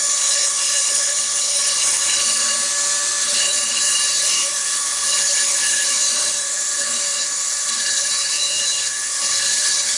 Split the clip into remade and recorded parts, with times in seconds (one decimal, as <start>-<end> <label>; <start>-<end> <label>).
0.0-2.5 remade; 2.5-3.2 recorded; 3.2-10.0 remade